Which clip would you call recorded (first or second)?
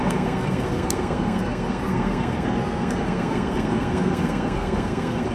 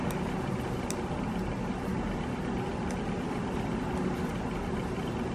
second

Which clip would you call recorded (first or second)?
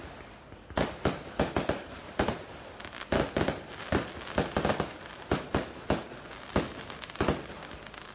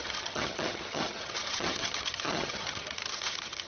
first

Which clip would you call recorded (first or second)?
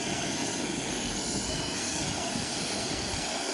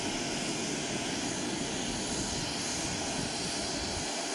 second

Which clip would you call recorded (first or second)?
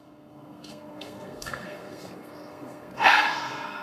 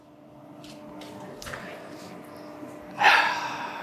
second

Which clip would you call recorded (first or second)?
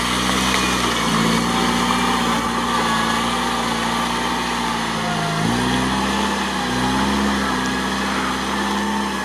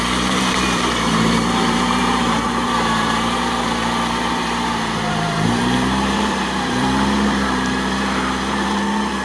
first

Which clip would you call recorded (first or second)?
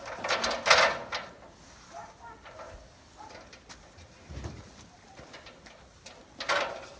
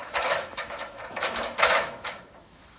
first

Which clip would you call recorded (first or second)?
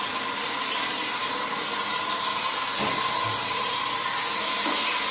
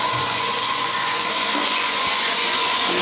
first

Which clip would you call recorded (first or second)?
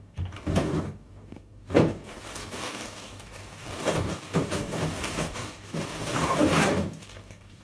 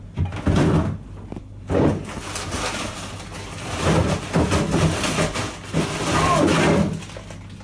second